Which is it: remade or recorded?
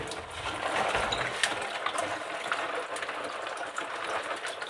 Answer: recorded